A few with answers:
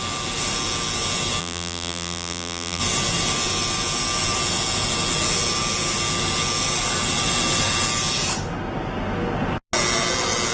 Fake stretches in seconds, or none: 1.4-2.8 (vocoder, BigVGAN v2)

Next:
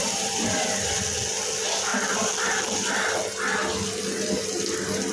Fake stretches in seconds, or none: 0.0-1.0 (vocoder, BigVGAN v2); 1.9-2.6

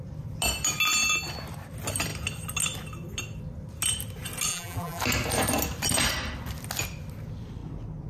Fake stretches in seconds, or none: 4.5-5.0 (vocoder, BigVGAN v2)

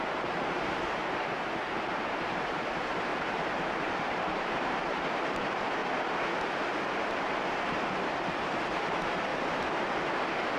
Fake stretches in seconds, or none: 0.0-1.0 (vocoder, BigVGAN v2); 1.6-5.8; 7.3-9.3

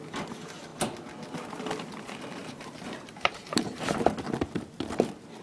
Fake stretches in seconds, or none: 2.4-4.1 (vocoder, BigVGAN v2)

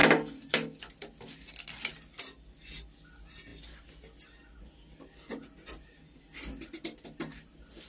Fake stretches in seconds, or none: 0.0-1.9 (vocoder, BigVGAN v2); 3.0-3.5; 6.2-7.9